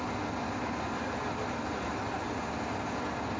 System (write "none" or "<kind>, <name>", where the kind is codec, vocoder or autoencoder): none